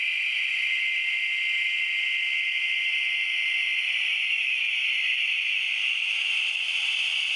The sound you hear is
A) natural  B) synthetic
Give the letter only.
A